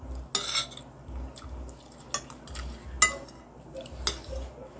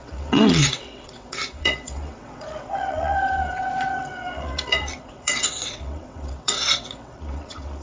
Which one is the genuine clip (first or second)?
first